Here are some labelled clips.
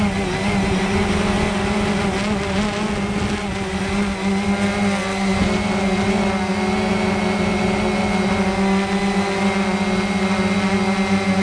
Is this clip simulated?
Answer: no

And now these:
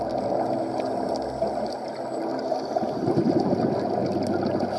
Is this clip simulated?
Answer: no